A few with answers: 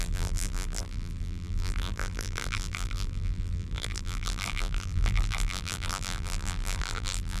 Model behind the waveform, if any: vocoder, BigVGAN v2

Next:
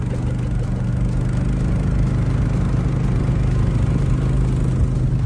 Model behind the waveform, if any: none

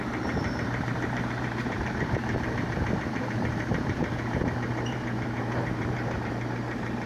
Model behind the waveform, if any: vocoder, BigVGAN v2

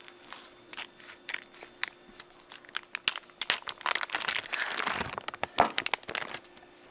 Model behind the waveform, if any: none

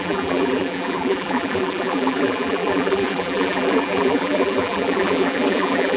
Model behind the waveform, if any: vocoder, BigVGAN v2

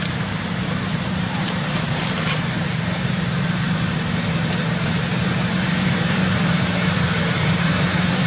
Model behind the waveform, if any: vocoder, BigVGAN v2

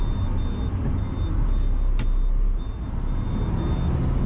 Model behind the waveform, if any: none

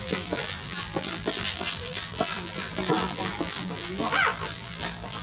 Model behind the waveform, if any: vocoder, BigVGAN v2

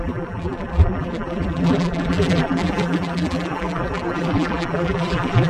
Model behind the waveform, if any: vocoder, BigVGAN v2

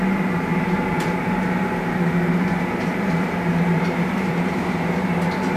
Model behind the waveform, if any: vocoder, BigVGAN v2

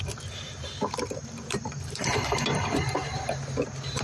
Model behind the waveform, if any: vocoder, BigVGAN v2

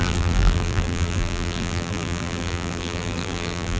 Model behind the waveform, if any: vocoder, BigVGAN v2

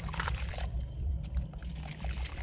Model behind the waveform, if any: vocoder, BigVGAN v2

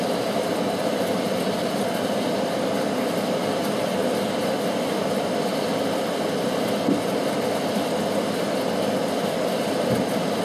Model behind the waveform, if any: none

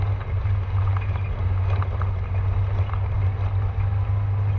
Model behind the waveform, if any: none